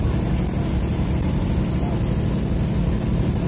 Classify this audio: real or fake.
real